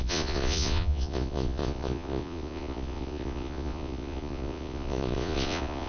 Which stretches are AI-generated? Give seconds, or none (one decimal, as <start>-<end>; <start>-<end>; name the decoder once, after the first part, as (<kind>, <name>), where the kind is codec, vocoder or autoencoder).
0.0-5.9 (vocoder, Vocos)